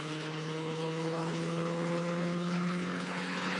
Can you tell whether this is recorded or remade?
remade